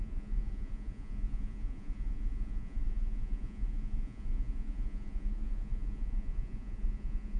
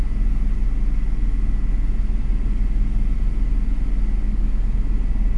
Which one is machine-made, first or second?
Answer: first